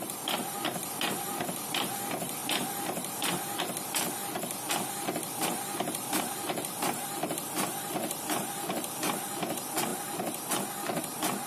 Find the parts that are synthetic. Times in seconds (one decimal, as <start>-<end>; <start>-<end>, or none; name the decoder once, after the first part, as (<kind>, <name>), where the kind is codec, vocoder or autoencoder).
none